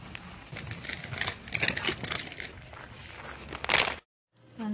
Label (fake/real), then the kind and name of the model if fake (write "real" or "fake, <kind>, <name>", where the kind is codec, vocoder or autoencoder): real